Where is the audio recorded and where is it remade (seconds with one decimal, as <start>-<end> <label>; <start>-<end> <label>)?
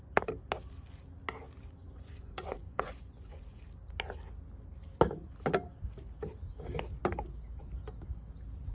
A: 0.0-1.8 recorded; 1.8-3.6 remade; 3.6-8.7 recorded